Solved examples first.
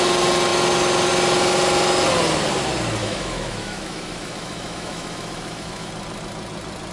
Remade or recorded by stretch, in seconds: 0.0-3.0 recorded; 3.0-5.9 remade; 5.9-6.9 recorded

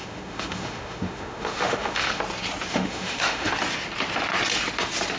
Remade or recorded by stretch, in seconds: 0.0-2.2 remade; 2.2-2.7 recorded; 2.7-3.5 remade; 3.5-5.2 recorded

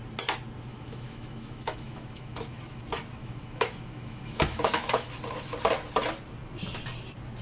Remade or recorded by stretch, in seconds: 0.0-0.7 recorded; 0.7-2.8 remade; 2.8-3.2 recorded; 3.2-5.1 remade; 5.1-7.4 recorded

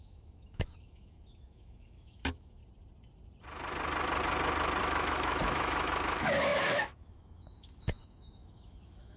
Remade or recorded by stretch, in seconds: 0.0-2.6 remade; 2.6-4.8 recorded; 4.8-9.2 remade

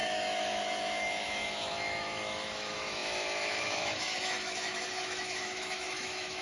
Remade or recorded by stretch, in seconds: 0.0-6.4 remade

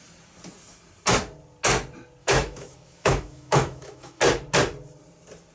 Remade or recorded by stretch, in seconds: 0.0-2.2 recorded; 2.2-4.2 remade; 4.2-5.5 recorded

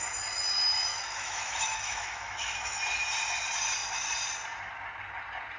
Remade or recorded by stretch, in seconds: 0.0-0.9 recorded; 0.9-2.8 remade; 2.8-5.6 recorded